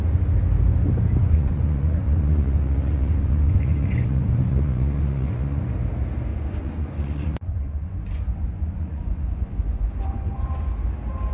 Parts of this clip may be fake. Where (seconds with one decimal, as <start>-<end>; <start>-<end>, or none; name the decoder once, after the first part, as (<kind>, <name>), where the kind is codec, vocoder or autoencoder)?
1.2-5.6 (vocoder, Vocos); 6.3-10.6